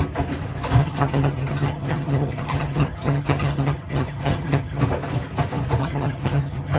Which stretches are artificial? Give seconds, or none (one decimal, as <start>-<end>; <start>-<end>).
0.8-4.8; 5.8-6.8